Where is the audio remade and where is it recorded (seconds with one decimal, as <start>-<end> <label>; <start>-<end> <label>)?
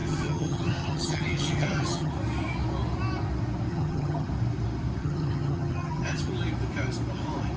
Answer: 0.0-2.1 remade; 2.1-3.7 recorded; 3.7-4.3 remade; 4.3-5.0 recorded; 5.0-6.3 remade; 6.3-7.6 recorded